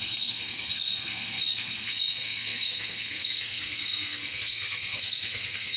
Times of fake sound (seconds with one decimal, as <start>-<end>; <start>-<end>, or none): 0.0-5.8